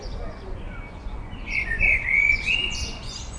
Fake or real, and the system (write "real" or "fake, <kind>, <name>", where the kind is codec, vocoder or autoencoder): fake, vocoder, Vocos